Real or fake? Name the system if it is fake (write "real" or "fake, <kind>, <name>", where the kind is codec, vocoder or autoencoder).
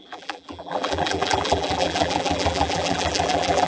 fake, vocoder, BigVGAN v2